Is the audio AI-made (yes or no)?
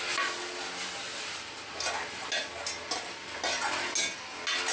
no